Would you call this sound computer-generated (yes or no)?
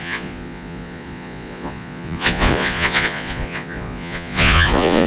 yes